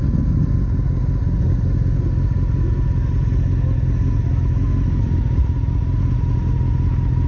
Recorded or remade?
recorded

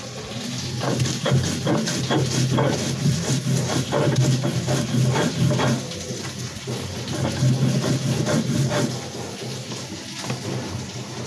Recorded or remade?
recorded